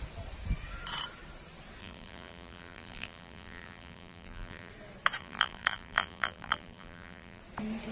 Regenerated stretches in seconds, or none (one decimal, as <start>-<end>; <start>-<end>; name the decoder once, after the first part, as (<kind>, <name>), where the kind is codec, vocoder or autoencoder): 1.8-4.7 (vocoder, BigVGAN v2); 5.2-7.4